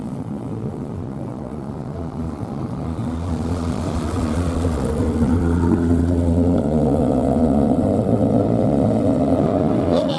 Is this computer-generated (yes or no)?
yes